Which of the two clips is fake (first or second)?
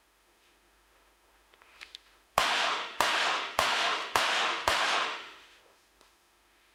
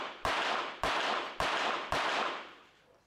first